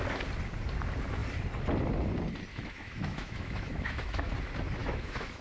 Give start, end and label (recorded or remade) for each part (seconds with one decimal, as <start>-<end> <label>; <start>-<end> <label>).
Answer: 0.0-2.5 recorded; 2.5-4.3 remade; 4.3-4.8 recorded; 4.8-5.4 remade